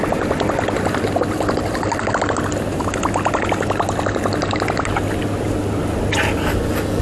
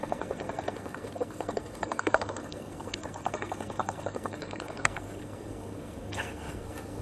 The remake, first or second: second